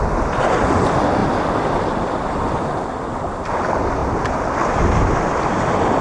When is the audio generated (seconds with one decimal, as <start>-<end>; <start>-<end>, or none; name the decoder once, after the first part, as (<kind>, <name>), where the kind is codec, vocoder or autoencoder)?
none